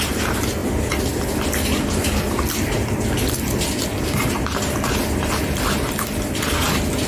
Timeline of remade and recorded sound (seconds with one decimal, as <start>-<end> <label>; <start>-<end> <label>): 0.0-7.1 recorded